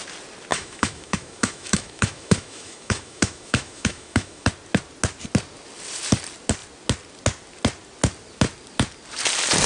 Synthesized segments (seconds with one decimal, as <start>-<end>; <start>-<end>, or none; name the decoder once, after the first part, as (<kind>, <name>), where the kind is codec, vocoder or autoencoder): 0.5-4.5 (autoencoder, DAC-VAE)